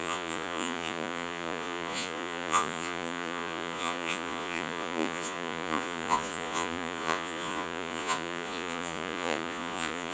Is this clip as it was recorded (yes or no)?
no